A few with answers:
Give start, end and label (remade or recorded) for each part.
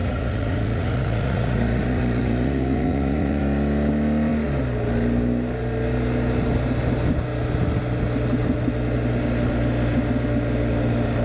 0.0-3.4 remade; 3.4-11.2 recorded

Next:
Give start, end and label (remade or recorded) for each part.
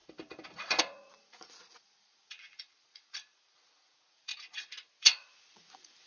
0.0-0.8 recorded; 0.8-4.3 remade; 4.3-5.0 recorded; 5.0-6.1 remade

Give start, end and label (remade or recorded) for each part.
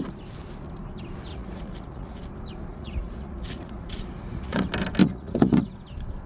0.0-1.3 recorded; 1.3-2.2 remade; 2.2-2.7 recorded; 2.7-4.6 remade; 4.6-5.0 recorded; 5.0-5.8 remade; 5.8-6.3 recorded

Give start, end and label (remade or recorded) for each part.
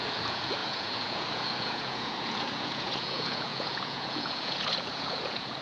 0.0-5.6 remade